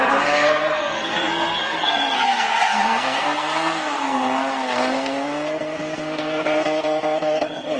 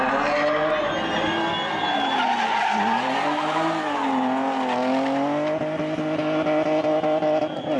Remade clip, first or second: first